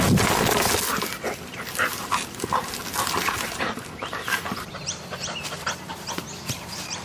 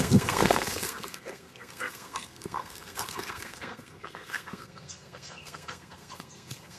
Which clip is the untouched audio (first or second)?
first